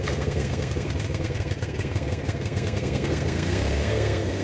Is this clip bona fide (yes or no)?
no